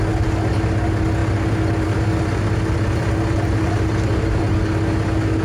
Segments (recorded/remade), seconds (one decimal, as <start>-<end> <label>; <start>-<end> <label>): 0.0-1.2 recorded; 1.2-4.4 remade; 4.4-5.4 recorded